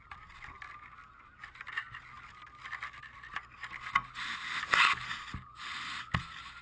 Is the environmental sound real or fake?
real